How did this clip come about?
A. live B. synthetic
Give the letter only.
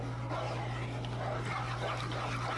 A